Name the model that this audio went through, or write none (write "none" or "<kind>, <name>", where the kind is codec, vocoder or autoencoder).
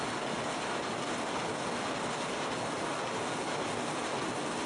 none